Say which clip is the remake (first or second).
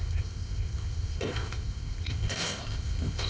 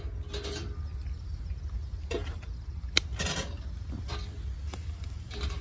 first